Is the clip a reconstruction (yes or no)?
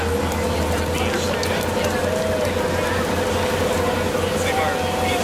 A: no